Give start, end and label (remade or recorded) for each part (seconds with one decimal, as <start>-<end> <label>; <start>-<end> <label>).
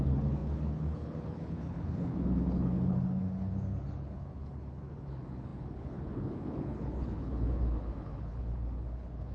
0.0-9.3 remade